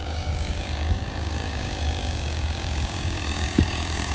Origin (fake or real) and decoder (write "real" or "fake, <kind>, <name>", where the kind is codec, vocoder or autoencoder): fake, codec, DAC